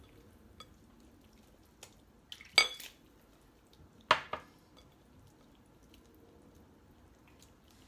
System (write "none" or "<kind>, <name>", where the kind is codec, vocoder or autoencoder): none